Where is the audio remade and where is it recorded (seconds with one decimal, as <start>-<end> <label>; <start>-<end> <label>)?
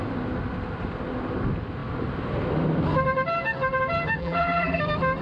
0.0-4.2 recorded; 4.2-4.8 remade; 4.8-5.2 recorded